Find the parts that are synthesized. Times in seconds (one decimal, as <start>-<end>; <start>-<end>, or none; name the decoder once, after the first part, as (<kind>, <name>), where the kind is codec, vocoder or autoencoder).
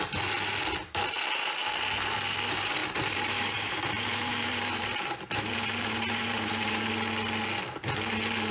2.8-6.9 (vocoder, BigVGAN v2)